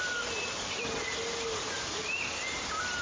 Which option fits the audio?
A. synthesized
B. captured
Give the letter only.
B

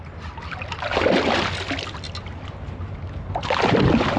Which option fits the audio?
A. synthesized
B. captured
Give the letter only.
B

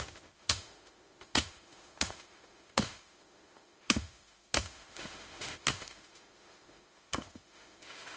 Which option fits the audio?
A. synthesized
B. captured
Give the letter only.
A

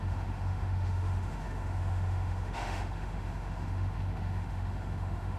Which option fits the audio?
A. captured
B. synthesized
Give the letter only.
B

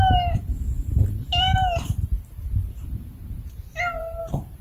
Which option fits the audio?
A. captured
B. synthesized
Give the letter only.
B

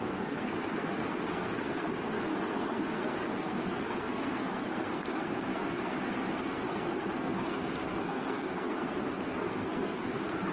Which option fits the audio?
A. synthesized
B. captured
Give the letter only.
A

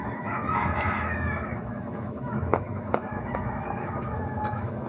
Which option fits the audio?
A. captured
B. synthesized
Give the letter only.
B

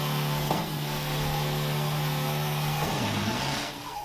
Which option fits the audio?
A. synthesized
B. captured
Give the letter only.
A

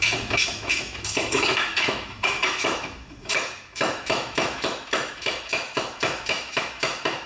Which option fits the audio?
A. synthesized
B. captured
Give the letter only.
A